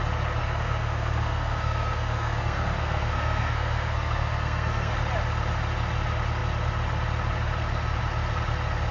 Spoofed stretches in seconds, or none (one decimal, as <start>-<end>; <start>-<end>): 0.4-4.9